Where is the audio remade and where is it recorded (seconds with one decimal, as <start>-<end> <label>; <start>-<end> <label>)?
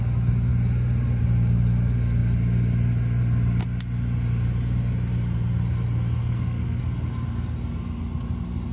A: 0.0-6.2 recorded; 6.2-6.8 remade; 6.8-8.7 recorded